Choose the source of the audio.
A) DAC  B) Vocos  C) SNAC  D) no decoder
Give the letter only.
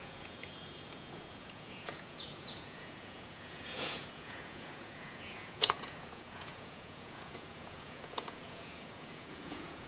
B